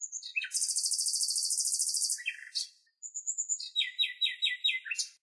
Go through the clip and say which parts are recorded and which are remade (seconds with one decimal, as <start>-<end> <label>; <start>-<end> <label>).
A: 0.0-5.2 recorded